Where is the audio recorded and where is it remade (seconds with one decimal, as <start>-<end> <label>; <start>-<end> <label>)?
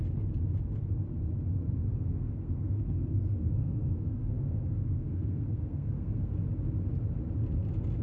0.0-1.9 recorded; 1.9-6.3 remade; 6.3-8.0 recorded